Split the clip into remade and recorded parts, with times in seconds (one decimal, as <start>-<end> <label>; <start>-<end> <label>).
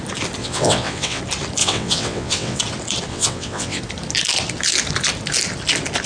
0.0-0.4 recorded; 0.4-1.2 remade; 1.2-1.6 recorded; 1.6-2.6 remade; 2.6-3.1 recorded; 3.1-3.8 remade; 3.8-6.1 recorded